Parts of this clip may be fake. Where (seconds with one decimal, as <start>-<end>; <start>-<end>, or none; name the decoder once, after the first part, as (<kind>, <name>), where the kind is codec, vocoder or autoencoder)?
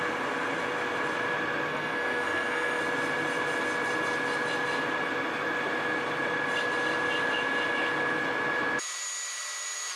1.7-2.8 (codec, SNAC)